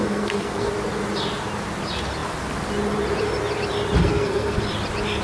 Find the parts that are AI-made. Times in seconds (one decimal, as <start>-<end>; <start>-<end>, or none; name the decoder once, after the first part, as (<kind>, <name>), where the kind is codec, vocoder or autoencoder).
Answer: 0.0-0.7 (codec, SNAC); 4.0-4.6